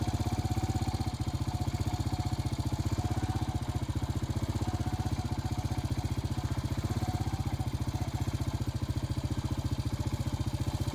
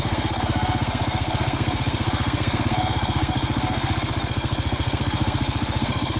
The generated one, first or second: second